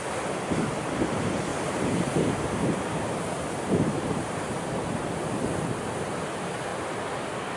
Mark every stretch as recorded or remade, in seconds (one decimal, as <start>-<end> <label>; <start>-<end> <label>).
0.0-1.5 recorded; 1.5-4.6 remade; 4.6-7.6 recorded